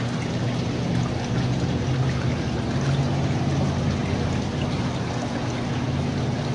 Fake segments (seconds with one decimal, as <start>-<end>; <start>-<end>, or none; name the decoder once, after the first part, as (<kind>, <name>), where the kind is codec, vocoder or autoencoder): none